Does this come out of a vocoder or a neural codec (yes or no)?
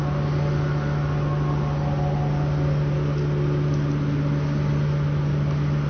no